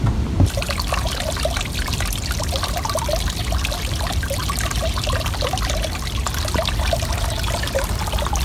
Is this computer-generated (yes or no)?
no